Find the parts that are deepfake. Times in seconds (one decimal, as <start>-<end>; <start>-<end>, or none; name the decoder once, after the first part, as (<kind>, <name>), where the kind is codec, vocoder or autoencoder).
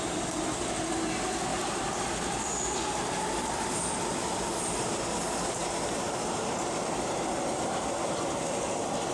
none